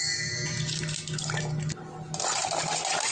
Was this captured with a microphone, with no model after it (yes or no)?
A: yes